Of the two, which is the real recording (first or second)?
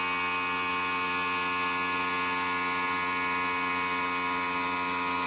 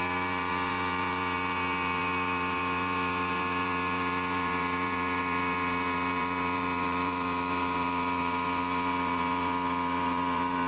first